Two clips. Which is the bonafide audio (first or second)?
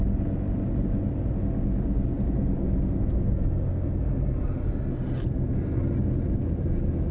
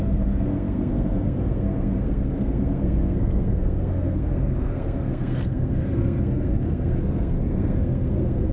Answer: first